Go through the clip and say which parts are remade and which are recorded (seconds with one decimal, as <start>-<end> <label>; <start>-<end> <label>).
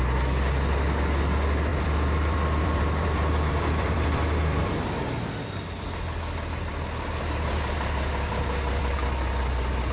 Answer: 0.0-1.7 recorded; 1.7-4.6 remade; 4.6-9.9 recorded